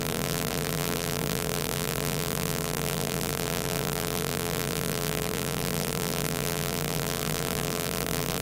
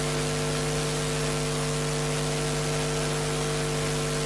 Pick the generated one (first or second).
first